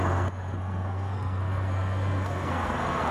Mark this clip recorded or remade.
remade